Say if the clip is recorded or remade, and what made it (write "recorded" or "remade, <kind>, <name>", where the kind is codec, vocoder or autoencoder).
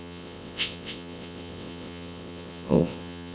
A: remade, vocoder, WaveNeXt